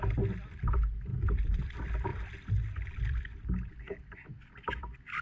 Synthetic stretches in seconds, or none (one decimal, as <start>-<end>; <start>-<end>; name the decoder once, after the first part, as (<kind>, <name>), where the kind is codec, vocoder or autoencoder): 1.1-1.7 (vocoder, BigVGAN v2); 2.1-5.2